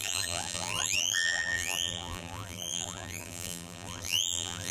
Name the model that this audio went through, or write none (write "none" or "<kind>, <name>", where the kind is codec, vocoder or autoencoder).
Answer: vocoder, BigVGAN v2